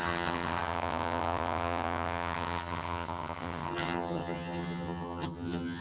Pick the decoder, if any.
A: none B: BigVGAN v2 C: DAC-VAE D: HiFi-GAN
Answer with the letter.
D